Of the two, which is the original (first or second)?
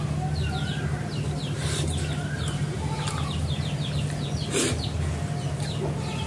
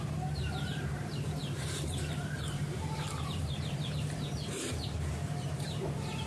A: first